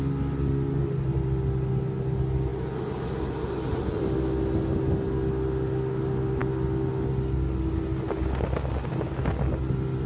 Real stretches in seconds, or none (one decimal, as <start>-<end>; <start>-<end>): 0.0-10.1